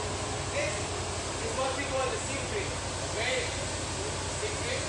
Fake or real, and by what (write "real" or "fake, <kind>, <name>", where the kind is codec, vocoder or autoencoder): real